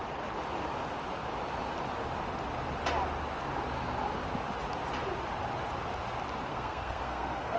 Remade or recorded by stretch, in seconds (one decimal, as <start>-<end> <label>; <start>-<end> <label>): 0.0-6.5 recorded; 6.5-7.6 remade